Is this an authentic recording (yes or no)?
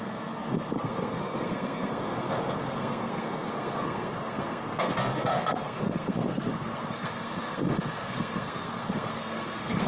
no